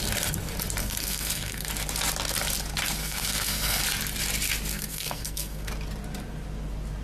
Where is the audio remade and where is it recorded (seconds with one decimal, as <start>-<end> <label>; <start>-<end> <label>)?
0.0-0.8 recorded; 0.8-1.7 remade; 1.7-3.0 recorded; 3.0-3.8 remade; 3.8-4.7 recorded; 4.7-5.7 remade; 5.7-7.0 recorded